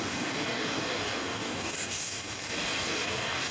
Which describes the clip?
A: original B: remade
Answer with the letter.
B